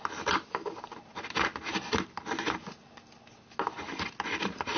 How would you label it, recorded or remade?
recorded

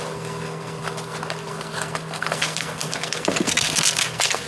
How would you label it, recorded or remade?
remade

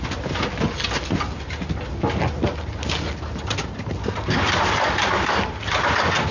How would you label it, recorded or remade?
recorded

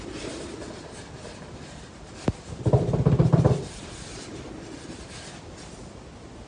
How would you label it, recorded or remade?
recorded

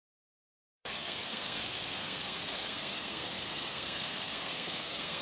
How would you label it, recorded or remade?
remade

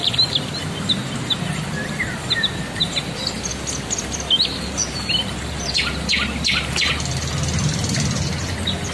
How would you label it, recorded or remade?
recorded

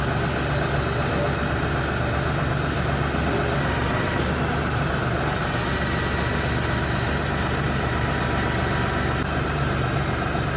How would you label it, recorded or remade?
recorded